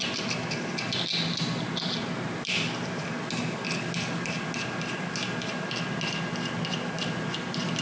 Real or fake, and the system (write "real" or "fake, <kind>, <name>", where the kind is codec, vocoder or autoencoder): real